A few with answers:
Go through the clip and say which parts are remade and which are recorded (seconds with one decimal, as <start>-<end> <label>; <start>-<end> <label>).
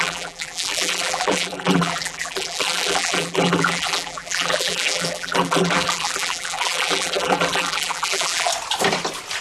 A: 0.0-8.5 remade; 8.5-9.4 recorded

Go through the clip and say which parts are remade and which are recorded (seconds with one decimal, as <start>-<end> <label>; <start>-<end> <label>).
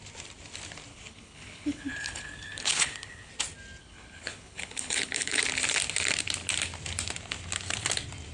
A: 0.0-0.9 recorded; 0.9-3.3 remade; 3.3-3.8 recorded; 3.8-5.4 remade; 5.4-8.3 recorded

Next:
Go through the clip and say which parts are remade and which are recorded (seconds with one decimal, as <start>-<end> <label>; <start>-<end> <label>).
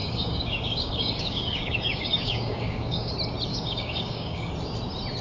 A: 0.0-3.1 remade; 3.1-3.5 recorded; 3.5-4.5 remade; 4.5-5.2 recorded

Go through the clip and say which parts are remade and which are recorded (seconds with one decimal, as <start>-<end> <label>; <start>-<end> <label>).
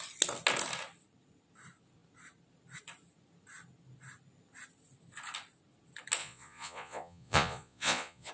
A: 0.0-6.2 recorded; 6.2-8.3 remade